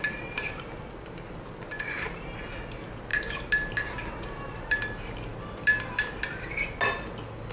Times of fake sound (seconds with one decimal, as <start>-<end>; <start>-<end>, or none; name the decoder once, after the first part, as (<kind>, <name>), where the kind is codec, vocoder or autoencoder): none